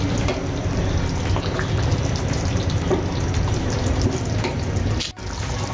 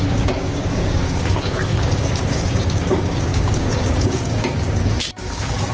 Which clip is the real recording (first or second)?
first